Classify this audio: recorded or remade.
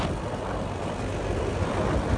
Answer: recorded